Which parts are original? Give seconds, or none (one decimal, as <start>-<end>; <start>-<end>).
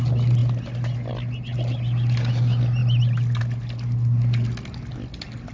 0.0-5.5